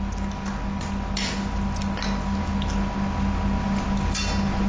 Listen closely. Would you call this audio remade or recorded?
recorded